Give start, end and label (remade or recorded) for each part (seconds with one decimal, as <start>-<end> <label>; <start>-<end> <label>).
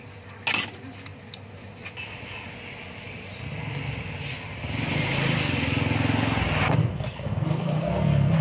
0.0-6.8 recorded; 6.8-8.4 remade